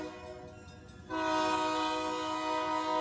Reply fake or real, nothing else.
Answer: real